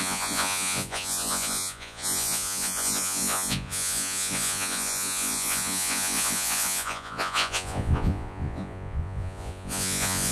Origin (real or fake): fake